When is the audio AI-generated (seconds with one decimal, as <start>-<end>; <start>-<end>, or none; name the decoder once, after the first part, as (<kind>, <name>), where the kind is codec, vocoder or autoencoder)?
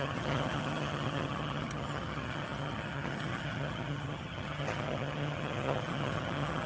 0.0-6.7 (vocoder, HiFi-GAN)